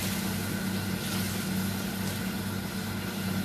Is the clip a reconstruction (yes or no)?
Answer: no